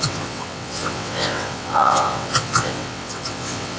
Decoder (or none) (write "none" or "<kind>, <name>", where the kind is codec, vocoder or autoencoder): vocoder, WaveNeXt